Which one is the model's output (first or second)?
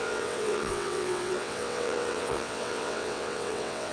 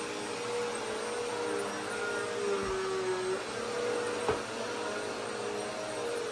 first